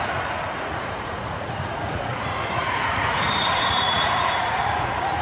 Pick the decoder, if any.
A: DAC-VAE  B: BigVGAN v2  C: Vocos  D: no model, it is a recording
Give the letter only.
C